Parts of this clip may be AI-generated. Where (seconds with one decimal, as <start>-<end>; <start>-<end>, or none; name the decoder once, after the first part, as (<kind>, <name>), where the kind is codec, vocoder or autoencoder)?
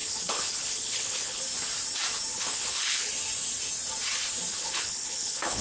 0.0-1.4 (codec, HILCodec); 2.3-3.1; 4.5-5.6